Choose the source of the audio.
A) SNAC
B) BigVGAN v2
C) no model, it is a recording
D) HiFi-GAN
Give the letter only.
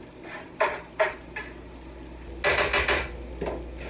C